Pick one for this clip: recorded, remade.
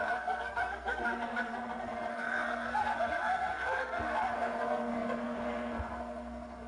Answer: remade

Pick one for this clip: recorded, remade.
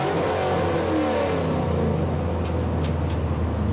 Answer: recorded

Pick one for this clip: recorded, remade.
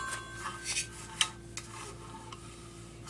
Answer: recorded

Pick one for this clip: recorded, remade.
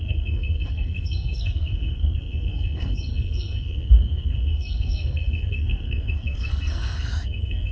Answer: remade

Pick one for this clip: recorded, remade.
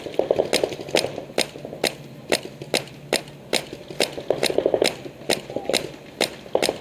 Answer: recorded